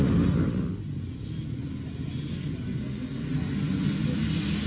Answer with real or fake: real